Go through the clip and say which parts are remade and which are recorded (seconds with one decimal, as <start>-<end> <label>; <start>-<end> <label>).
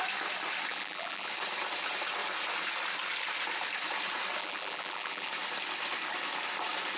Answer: 0.0-0.7 recorded; 0.7-1.3 remade; 1.3-4.4 recorded; 4.4-5.3 remade; 5.3-7.0 recorded